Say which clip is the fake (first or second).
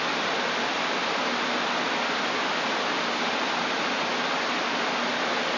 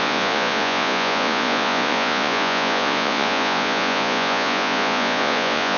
second